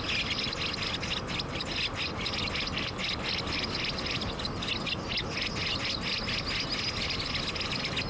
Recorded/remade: recorded